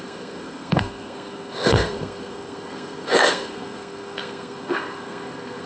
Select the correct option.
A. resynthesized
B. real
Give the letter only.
A